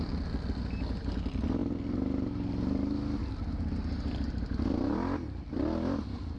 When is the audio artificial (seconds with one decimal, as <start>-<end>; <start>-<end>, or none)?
none